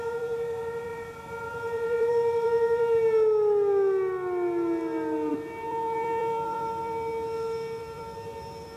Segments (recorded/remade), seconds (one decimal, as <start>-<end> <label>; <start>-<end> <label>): 0.0-2.8 remade; 2.8-5.3 recorded; 5.3-7.1 remade; 7.1-7.8 recorded; 7.8-8.8 remade

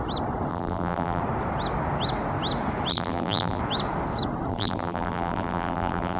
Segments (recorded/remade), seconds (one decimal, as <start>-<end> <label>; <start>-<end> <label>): 0.0-0.5 recorded; 0.5-1.2 remade; 1.2-2.9 recorded; 2.9-3.6 remade; 3.6-4.5 recorded; 4.5-6.2 remade

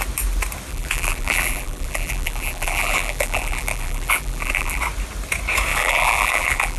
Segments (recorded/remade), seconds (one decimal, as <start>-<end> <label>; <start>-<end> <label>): 0.0-0.7 recorded; 0.7-4.8 remade; 4.8-5.7 recorded; 5.7-6.8 remade